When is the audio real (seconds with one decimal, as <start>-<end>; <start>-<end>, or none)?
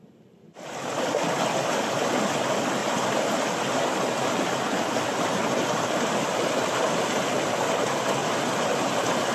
0.0-2.8; 6.7-8.2